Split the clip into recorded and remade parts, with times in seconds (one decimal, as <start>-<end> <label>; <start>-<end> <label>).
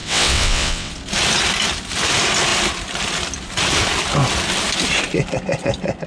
0.0-0.9 remade; 0.9-6.1 recorded